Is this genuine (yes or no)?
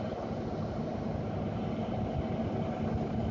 yes